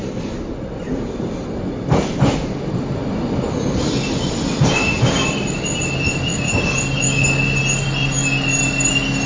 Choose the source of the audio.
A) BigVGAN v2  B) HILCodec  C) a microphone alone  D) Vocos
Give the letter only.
C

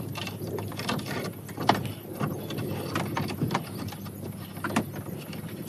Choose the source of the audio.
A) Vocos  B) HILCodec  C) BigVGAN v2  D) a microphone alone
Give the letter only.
D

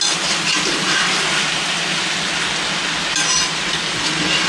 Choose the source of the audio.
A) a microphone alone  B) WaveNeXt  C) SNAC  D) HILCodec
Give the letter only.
A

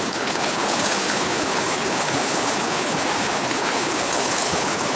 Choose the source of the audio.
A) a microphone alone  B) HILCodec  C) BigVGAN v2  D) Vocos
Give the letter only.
B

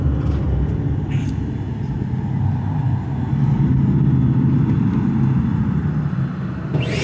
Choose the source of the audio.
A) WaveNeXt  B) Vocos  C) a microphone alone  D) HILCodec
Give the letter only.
C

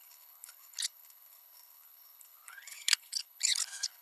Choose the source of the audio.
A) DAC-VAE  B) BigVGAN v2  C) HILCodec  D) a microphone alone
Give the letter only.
C